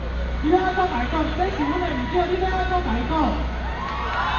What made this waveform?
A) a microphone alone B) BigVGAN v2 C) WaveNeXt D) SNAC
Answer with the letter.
A